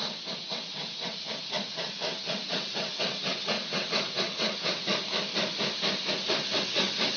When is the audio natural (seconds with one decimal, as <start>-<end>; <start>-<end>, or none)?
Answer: 4.9-6.1